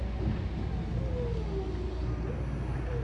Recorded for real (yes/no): yes